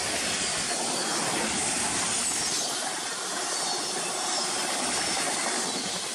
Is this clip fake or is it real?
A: real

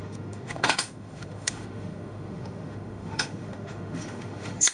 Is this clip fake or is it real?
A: fake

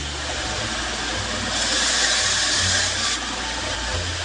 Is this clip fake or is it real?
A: real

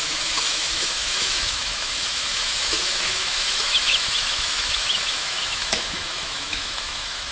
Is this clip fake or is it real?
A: fake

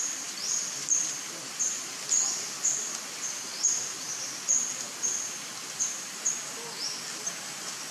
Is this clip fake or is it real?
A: real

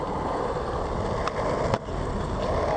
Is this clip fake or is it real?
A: real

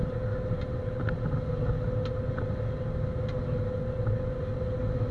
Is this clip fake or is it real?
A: real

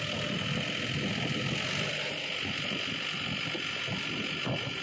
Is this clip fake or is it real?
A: real